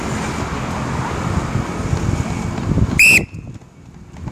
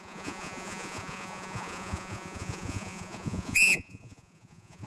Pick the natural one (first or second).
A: first